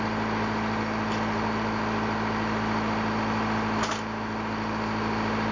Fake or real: real